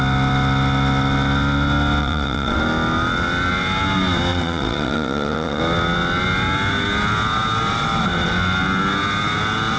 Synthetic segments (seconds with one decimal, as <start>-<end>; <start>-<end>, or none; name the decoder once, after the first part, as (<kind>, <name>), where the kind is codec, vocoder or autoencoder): 2.0-2.6 (vocoder, WaveNeXt); 4.3-5.6